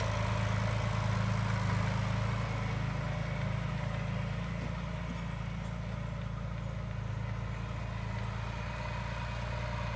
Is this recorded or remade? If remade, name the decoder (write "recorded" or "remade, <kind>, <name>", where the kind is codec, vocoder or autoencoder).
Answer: recorded